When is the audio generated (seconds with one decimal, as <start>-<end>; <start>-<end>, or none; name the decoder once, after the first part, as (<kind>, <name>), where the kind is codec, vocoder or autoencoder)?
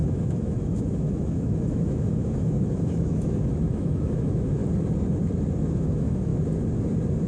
0.0-4.6 (autoencoder, DAC-VAE); 5.6-6.3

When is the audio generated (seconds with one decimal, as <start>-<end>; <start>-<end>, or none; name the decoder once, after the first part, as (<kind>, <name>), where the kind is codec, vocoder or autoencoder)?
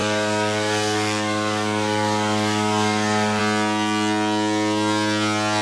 0.0-3.4 (codec, DAC)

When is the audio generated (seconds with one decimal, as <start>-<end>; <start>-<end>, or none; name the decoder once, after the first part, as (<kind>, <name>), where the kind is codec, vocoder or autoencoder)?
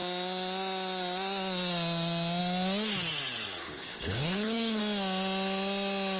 3.6-4.8 (codec, HILCodec)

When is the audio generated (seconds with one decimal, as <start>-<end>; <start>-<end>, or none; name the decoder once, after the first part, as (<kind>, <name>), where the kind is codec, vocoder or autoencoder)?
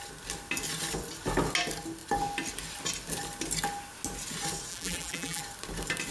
4.7-5.4 (vocoder, BigVGAN v2)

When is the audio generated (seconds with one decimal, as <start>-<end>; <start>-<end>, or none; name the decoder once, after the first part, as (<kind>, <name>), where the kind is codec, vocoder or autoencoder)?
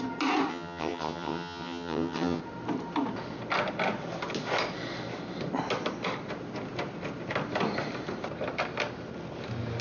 0.5-2.4 (vocoder, HiFi-GAN)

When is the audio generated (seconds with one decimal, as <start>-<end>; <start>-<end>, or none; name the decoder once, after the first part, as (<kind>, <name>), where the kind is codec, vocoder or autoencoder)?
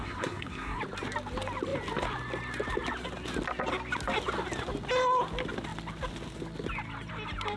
0.0-0.8 (codec, SNAC)